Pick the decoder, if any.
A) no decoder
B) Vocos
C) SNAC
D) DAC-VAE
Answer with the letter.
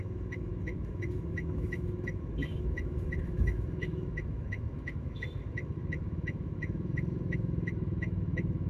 D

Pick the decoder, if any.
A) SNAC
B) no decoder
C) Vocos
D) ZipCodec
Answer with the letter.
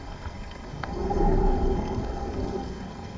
A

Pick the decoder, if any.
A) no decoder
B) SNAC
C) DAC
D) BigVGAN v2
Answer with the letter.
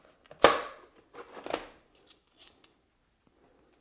A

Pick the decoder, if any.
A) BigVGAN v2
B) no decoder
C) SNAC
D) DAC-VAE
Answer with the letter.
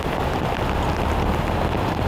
B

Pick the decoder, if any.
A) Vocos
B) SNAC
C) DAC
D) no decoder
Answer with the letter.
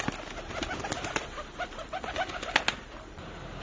D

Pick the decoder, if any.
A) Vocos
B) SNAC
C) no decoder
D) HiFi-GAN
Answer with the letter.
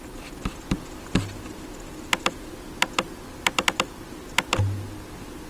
C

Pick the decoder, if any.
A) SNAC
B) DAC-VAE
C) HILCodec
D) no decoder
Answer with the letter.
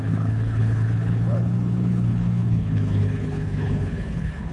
C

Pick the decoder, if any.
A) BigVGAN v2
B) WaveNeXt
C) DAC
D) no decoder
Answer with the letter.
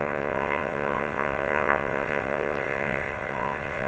B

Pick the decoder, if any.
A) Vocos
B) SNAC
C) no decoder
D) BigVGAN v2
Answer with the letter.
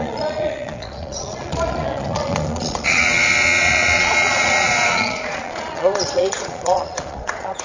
A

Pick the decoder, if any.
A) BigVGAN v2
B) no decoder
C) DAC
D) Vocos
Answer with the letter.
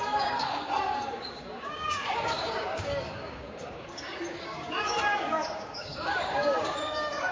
C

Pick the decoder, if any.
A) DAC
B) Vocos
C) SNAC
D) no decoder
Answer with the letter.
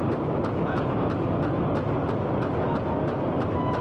D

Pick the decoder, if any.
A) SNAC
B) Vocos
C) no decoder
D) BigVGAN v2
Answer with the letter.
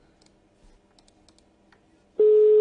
C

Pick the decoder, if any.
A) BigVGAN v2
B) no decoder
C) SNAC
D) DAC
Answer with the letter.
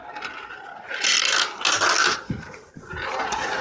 B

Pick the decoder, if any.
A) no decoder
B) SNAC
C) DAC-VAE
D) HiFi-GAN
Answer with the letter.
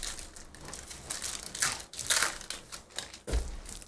A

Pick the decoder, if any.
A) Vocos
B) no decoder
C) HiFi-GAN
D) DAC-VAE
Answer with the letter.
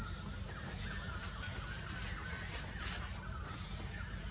B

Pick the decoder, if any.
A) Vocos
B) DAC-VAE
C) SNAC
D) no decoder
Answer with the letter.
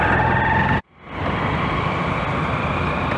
D